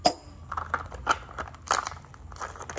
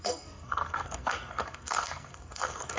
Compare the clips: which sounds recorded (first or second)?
first